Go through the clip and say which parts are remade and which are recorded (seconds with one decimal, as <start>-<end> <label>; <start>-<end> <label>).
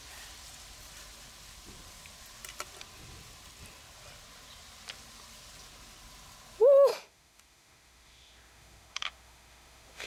0.0-6.9 recorded; 6.9-10.1 remade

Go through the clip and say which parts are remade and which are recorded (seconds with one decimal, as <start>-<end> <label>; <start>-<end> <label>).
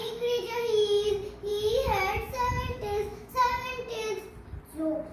0.0-1.1 remade; 1.1-1.5 recorded; 1.5-3.3 remade; 3.3-5.1 recorded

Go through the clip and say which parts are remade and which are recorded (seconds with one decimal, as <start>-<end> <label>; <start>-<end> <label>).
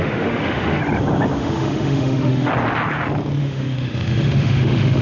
0.0-0.8 remade; 0.8-1.4 recorded; 1.4-2.5 remade; 2.5-3.4 recorded; 3.4-5.0 remade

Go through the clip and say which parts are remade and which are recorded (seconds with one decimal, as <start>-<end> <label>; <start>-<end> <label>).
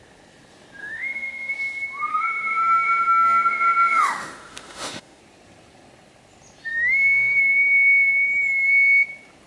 0.0-0.8 recorded; 0.8-1.5 remade; 1.5-2.1 recorded; 2.1-5.2 remade; 5.2-6.7 recorded; 6.7-7.4 remade; 7.4-9.5 recorded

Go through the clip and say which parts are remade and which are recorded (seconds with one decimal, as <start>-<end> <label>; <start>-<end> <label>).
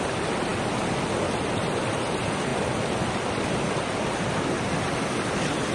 0.0-5.7 recorded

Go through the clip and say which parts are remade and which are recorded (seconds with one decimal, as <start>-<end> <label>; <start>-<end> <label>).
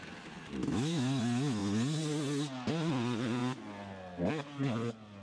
0.0-0.6 recorded; 0.6-1.2 remade; 1.2-5.2 recorded